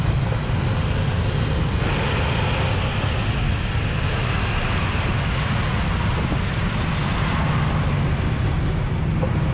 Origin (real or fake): real